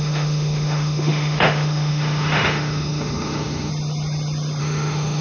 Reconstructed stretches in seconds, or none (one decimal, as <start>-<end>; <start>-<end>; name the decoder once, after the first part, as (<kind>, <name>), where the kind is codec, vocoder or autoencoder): 0.0-3.7 (autoencoder, DAC-VAE); 4.6-5.2